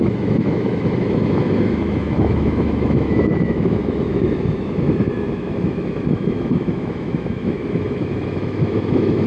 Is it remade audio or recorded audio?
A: remade